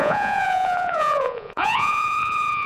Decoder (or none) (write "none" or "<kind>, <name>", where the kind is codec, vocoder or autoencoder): vocoder, Vocos